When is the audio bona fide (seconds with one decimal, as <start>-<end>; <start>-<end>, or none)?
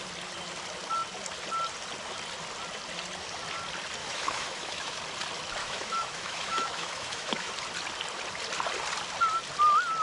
0.0-4.0; 5.0-5.6; 7.5-10.0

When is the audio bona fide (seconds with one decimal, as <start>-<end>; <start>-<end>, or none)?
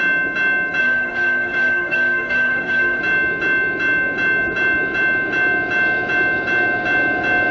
0.0-0.8; 3.0-7.5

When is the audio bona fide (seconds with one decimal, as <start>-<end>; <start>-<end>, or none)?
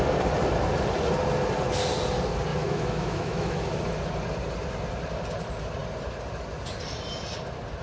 0.0-2.5; 3.8-7.8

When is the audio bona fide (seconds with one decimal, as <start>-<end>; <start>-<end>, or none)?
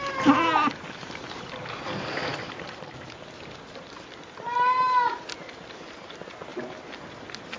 0.0-7.6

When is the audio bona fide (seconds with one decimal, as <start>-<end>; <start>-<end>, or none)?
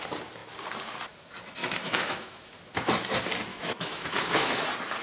0.0-1.6; 2.6-3.5; 4.6-5.0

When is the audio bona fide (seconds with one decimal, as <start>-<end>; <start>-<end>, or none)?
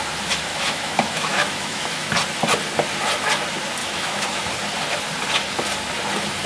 0.0-0.5; 2.1-3.8; 4.5-6.5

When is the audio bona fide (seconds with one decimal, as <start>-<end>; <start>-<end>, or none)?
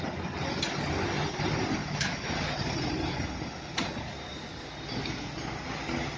0.0-1.8; 2.6-6.2